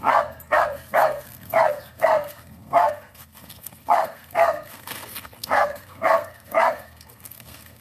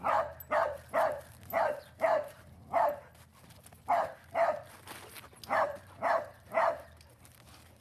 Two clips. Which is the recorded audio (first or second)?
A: second